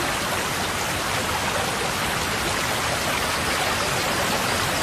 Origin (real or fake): real